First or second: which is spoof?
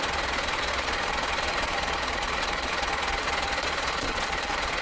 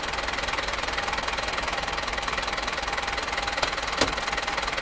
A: first